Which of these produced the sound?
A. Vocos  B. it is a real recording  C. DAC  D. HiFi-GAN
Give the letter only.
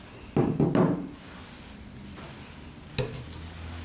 B